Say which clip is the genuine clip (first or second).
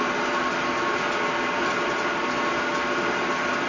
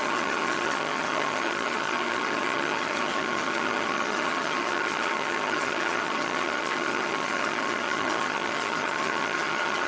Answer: first